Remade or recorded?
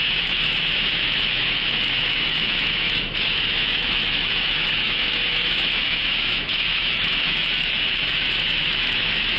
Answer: remade